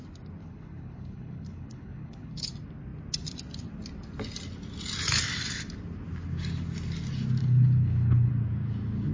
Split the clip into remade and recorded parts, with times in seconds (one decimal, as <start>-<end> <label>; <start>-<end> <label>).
0.0-0.4 recorded; 0.4-2.5 remade; 2.5-7.4 recorded; 7.4-8.3 remade; 8.3-9.1 recorded